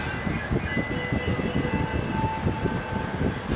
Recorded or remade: recorded